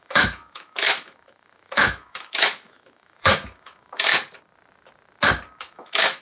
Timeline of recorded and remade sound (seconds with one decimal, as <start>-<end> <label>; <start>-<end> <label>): 0.0-4.1 remade; 4.1-5.6 recorded; 5.6-6.2 remade